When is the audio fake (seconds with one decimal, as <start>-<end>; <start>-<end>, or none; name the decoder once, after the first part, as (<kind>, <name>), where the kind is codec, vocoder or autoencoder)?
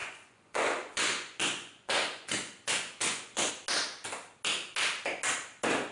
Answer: 0.0-3.5 (vocoder, Vocos)